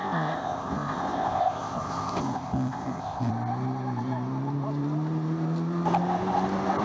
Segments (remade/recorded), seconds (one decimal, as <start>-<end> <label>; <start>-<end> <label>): 0.0-3.3 remade; 3.3-6.8 recorded